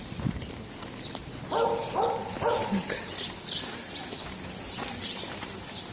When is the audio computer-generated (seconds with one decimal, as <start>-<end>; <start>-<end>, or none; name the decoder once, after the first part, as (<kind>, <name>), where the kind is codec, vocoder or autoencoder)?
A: 0.0-2.6 (vocoder, BigVGAN v2); 5.3-5.9